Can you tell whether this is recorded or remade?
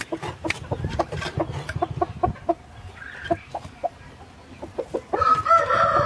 recorded